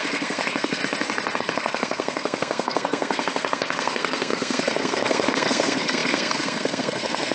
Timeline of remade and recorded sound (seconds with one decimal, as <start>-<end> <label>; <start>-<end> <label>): 0.0-0.8 remade; 0.8-1.4 recorded; 1.4-7.3 remade